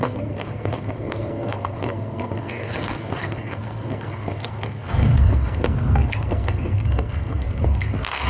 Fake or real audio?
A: fake